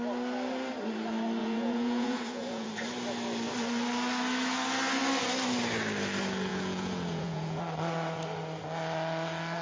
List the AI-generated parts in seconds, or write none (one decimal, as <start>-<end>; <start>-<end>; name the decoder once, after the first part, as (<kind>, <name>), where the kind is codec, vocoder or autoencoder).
1.4-2.7 (vocoder, Vocos); 6.5-7.6